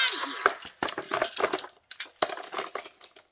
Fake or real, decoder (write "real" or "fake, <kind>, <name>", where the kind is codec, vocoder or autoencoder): real